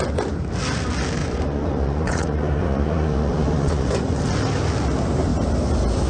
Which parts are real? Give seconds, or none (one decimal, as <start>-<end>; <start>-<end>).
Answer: 0.0-1.2; 4.2-6.1